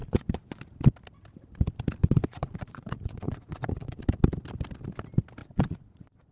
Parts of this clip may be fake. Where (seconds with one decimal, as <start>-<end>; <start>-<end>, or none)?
0.0-0.6; 2.0-4.0; 5.4-6.3